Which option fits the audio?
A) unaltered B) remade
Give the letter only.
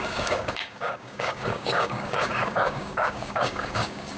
B